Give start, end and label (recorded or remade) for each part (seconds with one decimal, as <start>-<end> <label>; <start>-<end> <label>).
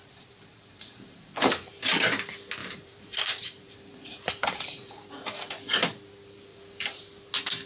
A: 0.0-0.5 recorded; 0.5-1.7 remade; 1.7-2.6 recorded; 2.6-5.1 remade; 5.1-6.5 recorded; 6.5-7.0 remade; 7.0-7.7 recorded